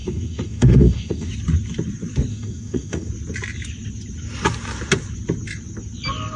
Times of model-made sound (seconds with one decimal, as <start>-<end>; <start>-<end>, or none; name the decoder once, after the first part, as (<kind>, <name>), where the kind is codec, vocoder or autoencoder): 0.0-1.3 (autoencoder, DAC-VAE); 2.3-3.1